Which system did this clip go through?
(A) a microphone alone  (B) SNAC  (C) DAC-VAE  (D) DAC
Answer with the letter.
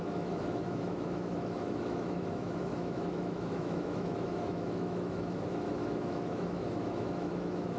C